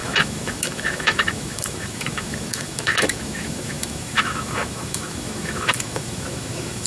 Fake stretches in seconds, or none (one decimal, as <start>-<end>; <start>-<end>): 0.0-6.9